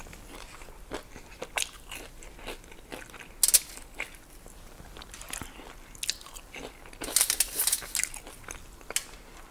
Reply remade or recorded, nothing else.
recorded